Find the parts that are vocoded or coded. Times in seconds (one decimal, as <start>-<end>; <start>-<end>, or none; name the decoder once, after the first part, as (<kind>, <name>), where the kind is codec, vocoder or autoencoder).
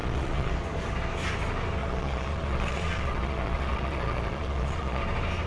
0.0-0.5 (vocoder, Vocos); 1.8-5.0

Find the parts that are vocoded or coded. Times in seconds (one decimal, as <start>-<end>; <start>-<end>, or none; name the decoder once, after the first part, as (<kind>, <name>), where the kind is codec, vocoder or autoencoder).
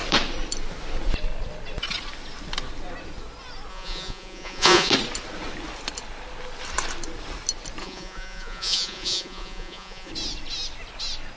3.7-4.9 (vocoder, Vocos); 7.8-10.1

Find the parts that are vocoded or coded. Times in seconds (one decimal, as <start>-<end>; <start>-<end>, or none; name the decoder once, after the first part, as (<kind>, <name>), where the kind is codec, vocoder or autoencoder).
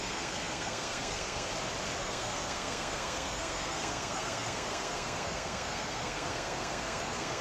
0.0-1.5 (codec, SNAC); 2.0-7.4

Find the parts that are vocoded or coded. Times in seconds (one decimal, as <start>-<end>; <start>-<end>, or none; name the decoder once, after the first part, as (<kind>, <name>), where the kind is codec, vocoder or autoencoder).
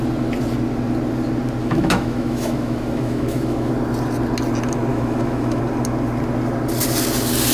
1.6-3.7 (autoencoder, DAC-VAE); 4.9-5.6